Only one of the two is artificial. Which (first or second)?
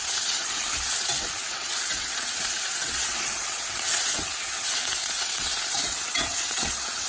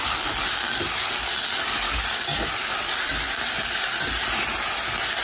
first